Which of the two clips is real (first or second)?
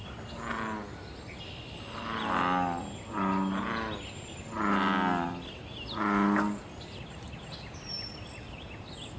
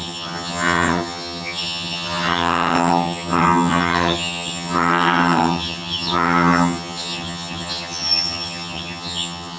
first